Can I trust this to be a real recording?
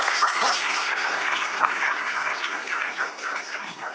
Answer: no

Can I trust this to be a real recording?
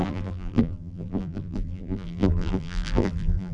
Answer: no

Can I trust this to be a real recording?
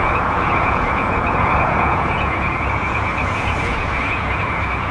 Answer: no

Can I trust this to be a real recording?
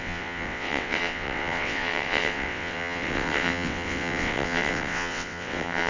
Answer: no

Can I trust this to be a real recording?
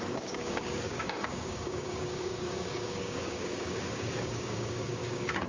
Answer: no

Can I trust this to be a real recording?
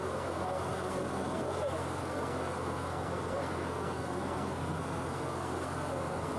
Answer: no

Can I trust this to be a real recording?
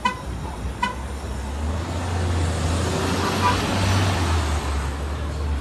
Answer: yes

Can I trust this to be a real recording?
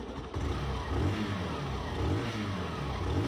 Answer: yes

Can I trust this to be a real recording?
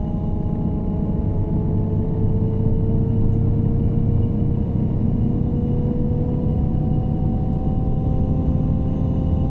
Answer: yes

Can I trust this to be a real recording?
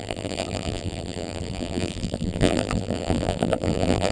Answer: no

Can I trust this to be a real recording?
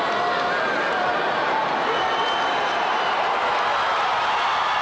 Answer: yes